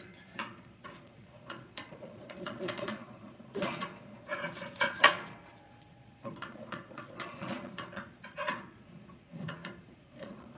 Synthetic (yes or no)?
yes